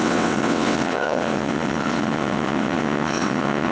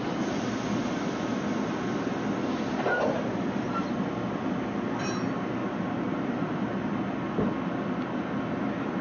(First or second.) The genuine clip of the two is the second